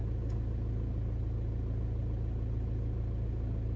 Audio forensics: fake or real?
real